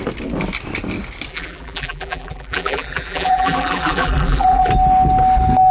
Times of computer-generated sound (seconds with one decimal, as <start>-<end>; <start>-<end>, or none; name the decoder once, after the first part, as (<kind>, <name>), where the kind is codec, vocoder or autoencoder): 1.3-4.7 (vocoder, BigVGAN v2)